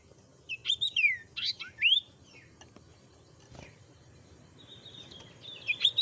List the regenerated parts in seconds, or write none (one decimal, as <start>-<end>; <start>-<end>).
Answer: 0.6-1.1; 2.9-6.0